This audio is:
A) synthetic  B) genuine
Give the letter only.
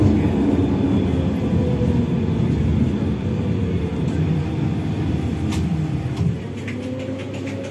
B